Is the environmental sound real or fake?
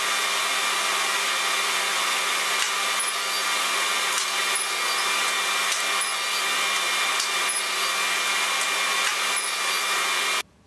real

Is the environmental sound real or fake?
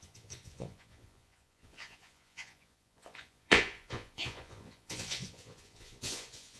fake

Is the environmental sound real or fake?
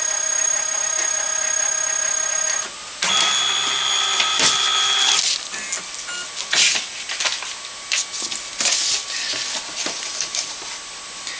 real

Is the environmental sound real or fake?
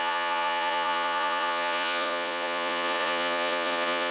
fake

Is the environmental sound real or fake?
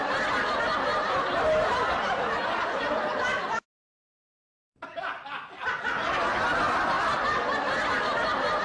real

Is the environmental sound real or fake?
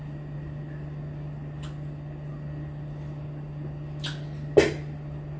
real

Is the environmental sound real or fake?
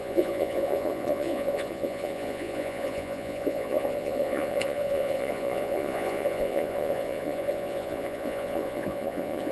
fake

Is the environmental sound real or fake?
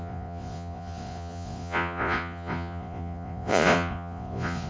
fake